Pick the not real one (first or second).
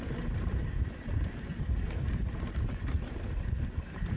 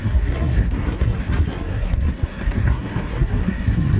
second